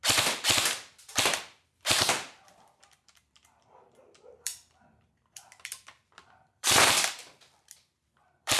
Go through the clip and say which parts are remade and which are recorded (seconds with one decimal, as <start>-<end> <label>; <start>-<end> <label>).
0.0-1.5 recorded; 1.5-8.6 remade